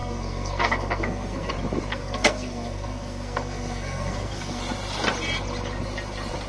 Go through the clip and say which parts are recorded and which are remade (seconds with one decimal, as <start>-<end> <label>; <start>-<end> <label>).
0.0-1.5 remade; 1.5-1.9 recorded; 1.9-4.6 remade; 4.6-6.5 recorded